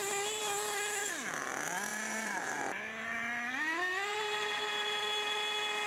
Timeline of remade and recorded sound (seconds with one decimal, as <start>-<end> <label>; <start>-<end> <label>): 0.0-1.9 recorded; 1.9-2.5 remade; 2.5-4.1 recorded; 4.1-5.0 remade; 5.0-5.9 recorded